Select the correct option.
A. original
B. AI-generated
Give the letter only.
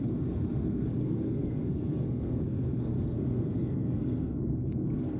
B